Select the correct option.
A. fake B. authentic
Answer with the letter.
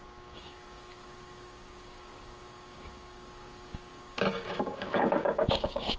A